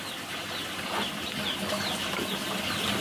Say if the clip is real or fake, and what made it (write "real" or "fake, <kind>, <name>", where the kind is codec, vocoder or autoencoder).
real